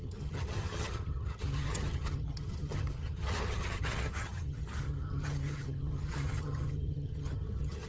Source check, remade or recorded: remade